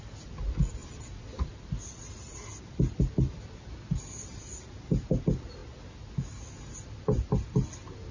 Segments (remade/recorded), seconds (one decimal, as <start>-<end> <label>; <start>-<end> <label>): 0.0-8.1 recorded